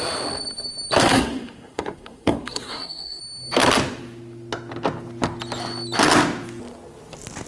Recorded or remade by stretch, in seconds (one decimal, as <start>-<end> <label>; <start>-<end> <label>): 0.0-1.0 recorded; 1.0-3.2 remade; 3.2-7.5 recorded